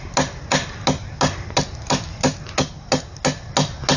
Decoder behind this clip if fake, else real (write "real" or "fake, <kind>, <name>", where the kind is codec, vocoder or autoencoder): real